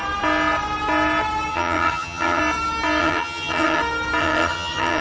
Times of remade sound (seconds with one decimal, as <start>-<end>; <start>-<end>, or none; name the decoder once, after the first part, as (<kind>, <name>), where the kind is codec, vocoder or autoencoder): 1.5-2.4 (vocoder, HiFi-GAN); 3.0-3.8; 4.2-5.0